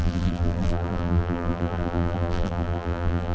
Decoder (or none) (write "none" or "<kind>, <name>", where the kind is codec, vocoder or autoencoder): vocoder, BigVGAN v2